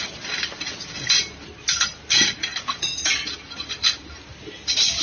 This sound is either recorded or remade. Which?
recorded